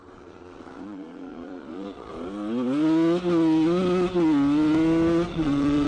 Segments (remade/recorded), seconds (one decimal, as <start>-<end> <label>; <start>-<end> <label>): 0.0-2.1 remade; 2.1-5.3 recorded; 5.3-5.9 remade